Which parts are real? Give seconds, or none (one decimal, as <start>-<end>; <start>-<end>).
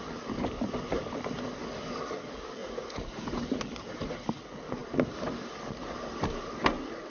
0.0-2.6; 3.2-7.1